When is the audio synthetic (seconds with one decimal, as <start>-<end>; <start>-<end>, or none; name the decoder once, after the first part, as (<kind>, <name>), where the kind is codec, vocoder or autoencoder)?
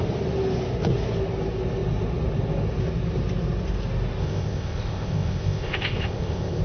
4.2-6.6 (codec, ZipCodec)